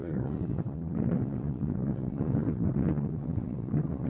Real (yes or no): no